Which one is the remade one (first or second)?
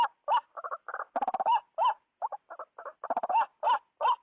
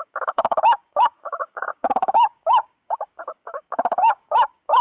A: second